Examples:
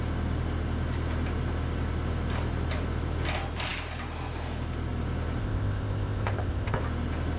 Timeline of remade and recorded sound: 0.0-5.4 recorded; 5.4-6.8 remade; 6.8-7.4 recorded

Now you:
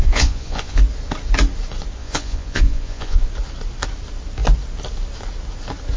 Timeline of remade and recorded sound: 0.0-0.8 remade; 0.8-2.0 recorded; 2.0-3.2 remade; 3.2-6.0 recorded